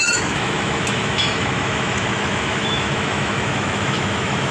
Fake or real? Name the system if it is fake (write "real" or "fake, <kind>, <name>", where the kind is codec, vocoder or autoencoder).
fake, autoencoder, DAC-VAE